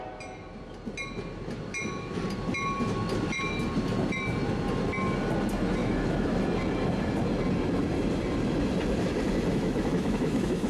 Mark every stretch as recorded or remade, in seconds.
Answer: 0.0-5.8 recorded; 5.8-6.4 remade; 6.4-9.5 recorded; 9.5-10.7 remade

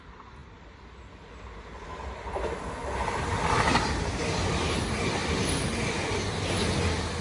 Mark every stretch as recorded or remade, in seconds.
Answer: 0.0-7.2 recorded